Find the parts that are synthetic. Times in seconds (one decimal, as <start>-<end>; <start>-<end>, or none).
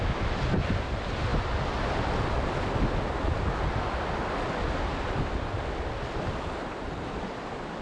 none